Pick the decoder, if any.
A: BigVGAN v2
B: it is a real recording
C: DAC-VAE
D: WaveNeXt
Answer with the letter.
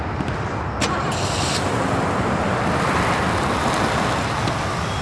B